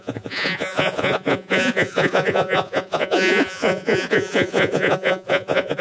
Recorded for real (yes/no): no